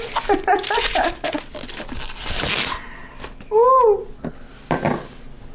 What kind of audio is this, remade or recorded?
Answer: recorded